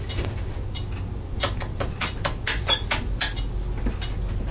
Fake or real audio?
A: real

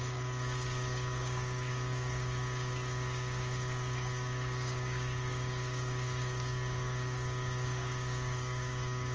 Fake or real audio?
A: fake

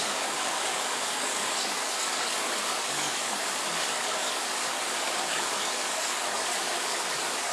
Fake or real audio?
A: fake